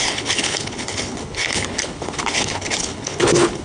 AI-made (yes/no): yes